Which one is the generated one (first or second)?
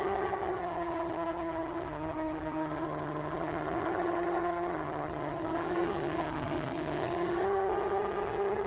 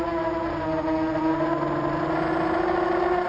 first